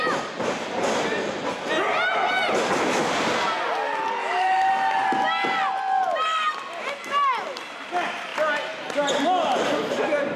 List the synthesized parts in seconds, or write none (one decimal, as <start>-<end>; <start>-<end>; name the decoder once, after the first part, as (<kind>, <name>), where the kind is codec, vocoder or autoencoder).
4.2-4.7 (codec, DAC)